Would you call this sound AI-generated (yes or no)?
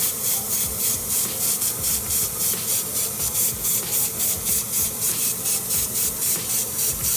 yes